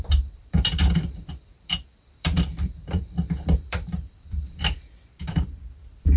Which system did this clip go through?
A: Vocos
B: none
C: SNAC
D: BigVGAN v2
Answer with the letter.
D